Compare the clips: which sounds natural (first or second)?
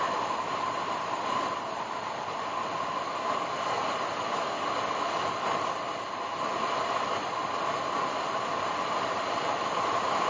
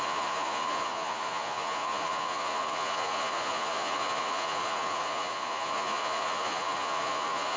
first